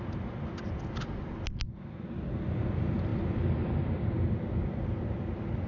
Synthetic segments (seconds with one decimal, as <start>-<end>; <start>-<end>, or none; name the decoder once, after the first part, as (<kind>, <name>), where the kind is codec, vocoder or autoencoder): none